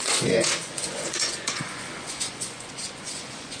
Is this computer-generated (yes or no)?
yes